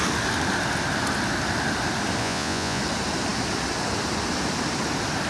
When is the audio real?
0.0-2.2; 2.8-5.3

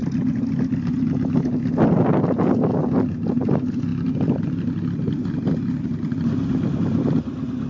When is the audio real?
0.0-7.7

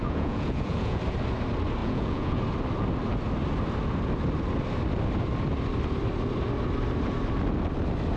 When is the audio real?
1.0-1.8; 2.4-8.2